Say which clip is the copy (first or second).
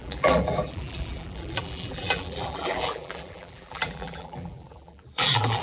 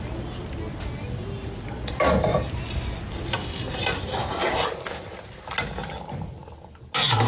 first